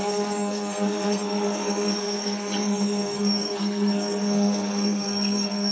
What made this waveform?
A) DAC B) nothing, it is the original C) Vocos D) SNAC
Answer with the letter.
D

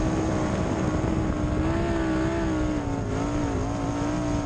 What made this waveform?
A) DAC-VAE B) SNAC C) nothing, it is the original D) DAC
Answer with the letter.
C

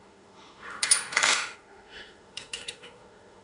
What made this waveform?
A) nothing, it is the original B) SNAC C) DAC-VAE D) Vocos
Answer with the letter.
C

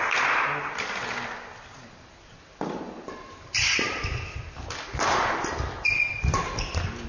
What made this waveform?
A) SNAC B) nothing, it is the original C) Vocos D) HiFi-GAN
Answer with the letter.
B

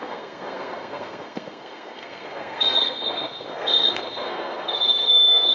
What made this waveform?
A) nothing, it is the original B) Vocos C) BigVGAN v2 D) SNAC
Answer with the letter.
D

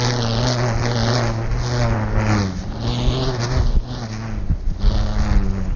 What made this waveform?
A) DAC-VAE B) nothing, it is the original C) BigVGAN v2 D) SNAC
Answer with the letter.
B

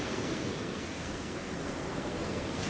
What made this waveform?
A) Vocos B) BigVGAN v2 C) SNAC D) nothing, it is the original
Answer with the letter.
C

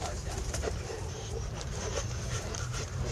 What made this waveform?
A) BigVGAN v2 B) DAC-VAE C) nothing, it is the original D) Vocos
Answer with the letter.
A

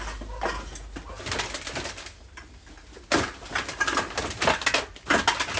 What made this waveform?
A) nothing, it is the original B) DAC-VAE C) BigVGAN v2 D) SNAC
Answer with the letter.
A